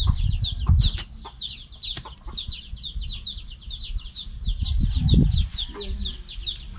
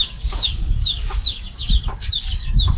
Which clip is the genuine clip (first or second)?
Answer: first